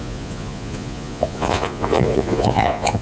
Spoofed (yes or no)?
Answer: yes